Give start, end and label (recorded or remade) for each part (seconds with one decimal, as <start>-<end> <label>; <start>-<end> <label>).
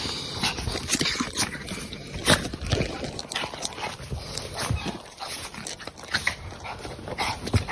0.0-2.2 remade; 2.2-6.2 recorded; 6.2-7.7 remade